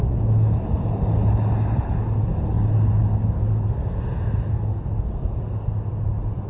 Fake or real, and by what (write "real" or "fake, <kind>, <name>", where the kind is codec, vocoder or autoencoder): real